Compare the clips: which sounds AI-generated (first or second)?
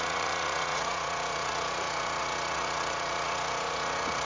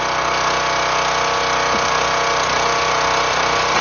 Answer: first